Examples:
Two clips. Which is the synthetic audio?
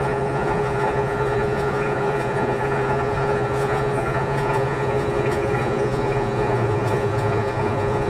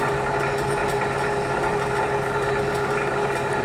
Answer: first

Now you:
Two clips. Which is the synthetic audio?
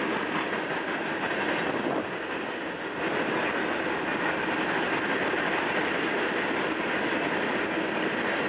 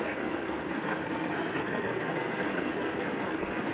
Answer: second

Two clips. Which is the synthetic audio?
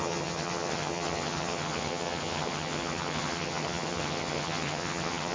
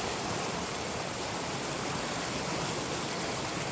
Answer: first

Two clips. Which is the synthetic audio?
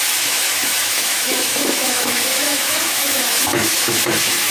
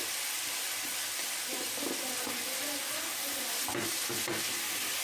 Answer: first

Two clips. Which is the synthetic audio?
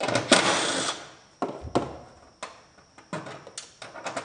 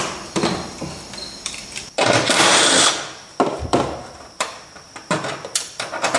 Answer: second